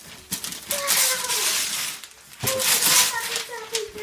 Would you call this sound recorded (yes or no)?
yes